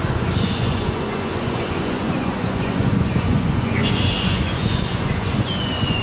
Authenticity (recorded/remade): remade